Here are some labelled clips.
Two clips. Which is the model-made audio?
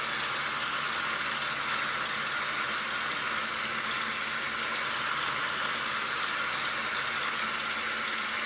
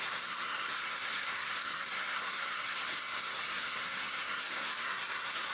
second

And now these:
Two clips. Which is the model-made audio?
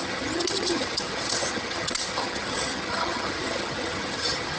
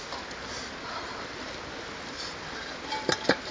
first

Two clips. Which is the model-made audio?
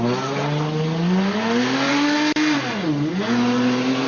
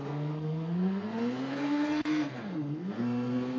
second